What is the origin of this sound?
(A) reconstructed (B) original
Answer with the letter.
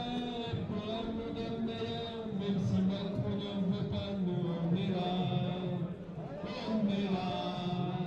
B